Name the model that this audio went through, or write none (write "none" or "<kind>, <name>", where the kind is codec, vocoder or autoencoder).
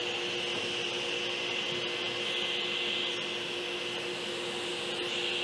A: none